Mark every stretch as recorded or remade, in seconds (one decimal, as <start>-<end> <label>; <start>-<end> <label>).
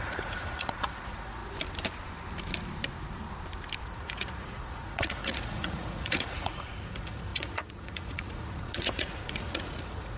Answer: 0.0-1.4 remade; 1.4-3.8 recorded; 3.8-10.2 remade